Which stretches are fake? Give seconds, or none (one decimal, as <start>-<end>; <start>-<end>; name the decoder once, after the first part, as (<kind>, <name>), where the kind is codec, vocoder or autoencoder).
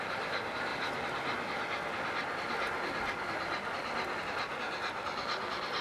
none